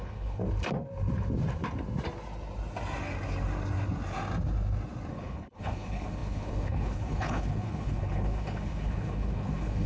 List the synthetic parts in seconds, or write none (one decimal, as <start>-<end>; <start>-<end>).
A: 0.0-0.4; 5.1-9.9